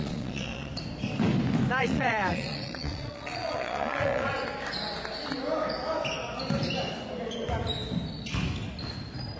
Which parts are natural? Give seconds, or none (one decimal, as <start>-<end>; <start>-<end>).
0.7-1.8; 4.3-9.4